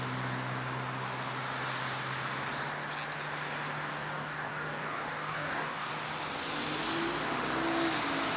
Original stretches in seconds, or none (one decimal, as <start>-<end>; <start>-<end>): 0.0-3.9; 5.9-8.4